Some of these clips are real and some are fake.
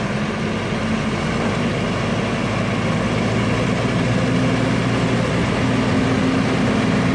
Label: real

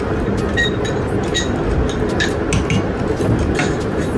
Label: real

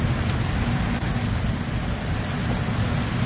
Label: real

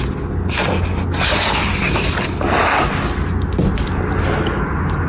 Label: real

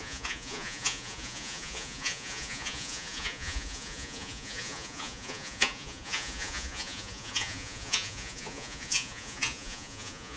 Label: fake